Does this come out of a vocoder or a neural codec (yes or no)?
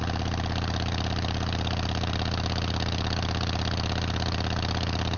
no